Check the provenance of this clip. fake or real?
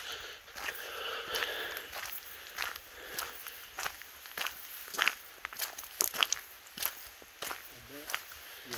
real